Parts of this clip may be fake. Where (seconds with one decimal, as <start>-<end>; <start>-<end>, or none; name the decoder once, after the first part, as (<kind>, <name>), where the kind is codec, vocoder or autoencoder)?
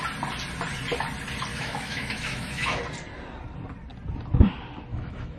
1.5-2.8 (autoencoder, DAC-VAE); 4.9-5.4